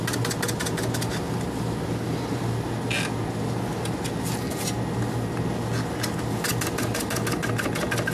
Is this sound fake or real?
real